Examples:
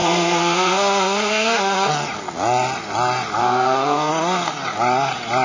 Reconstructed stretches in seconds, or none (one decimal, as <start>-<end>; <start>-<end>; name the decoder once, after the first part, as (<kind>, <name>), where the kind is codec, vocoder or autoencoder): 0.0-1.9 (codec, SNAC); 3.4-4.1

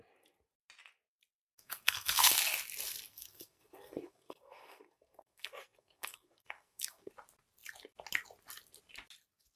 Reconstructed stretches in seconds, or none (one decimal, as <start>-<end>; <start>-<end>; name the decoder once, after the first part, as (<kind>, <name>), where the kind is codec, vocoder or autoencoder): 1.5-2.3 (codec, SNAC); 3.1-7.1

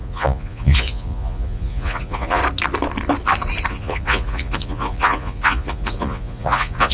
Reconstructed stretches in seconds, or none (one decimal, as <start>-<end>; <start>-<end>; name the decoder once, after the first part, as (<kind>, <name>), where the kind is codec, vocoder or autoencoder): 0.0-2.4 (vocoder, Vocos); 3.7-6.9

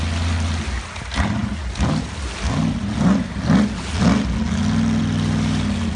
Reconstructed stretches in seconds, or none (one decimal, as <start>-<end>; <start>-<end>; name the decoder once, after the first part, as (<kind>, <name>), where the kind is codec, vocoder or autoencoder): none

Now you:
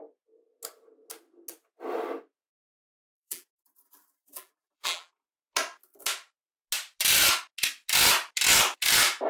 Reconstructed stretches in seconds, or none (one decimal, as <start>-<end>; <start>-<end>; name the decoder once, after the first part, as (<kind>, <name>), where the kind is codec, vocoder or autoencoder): 2.5-5.1 (vocoder, BigVGAN v2)

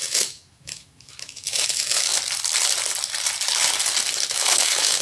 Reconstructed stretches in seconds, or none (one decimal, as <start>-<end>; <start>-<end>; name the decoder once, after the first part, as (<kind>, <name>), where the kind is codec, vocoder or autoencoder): 0.0-2.1 (autoencoder, DAC-VAE); 4.3-5.0